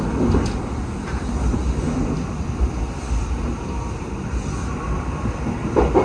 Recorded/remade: recorded